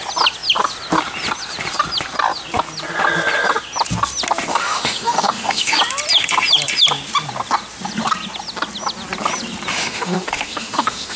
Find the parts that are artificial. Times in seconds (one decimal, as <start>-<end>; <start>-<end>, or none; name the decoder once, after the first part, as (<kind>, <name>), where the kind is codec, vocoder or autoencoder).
4.5-5.8 (autoencoder, DAC-VAE); 9.7-11.2